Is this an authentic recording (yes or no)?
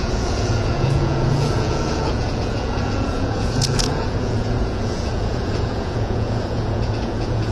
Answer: no